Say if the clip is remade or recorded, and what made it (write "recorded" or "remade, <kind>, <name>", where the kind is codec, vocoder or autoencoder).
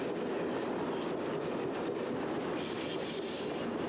recorded